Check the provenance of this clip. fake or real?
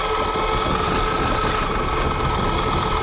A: real